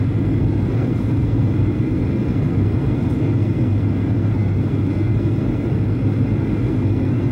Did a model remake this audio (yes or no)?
yes